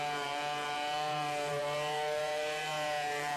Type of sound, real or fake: fake